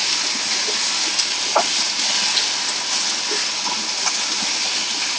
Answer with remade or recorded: recorded